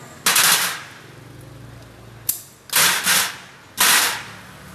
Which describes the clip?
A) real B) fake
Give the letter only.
A